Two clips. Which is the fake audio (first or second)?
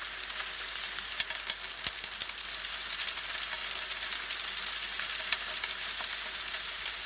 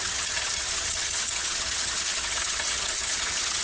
second